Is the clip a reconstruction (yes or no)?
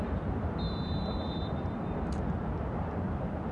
yes